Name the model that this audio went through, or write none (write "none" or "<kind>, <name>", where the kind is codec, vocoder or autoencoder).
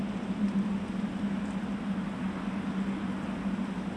none